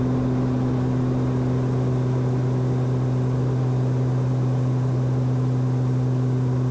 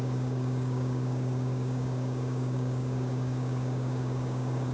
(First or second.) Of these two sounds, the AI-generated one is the second